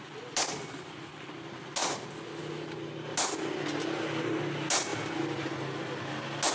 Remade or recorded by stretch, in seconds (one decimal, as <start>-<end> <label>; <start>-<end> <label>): 0.0-6.5 recorded